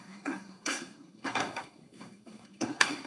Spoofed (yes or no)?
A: yes